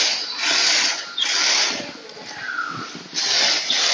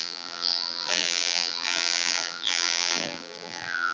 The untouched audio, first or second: first